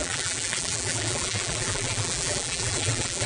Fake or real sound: fake